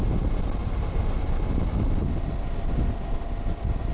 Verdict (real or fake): real